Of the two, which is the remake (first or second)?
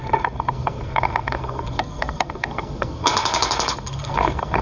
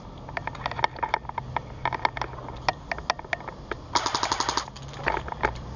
first